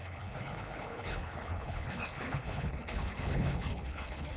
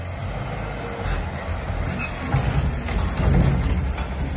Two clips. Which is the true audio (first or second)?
second